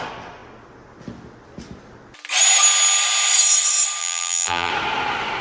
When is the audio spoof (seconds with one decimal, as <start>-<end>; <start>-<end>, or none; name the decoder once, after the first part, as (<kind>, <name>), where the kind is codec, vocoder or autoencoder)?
4.0-4.7 (vocoder, BigVGAN v2)